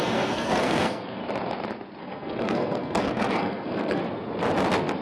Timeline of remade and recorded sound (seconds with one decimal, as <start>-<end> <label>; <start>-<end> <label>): 0.0-1.2 remade; 1.2-2.0 recorded; 2.0-4.0 remade; 4.0-5.0 recorded